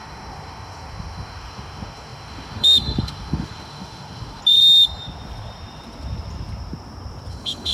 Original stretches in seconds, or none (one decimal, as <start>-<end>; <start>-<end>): 4.4-7.3